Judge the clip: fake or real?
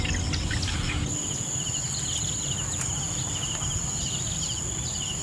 real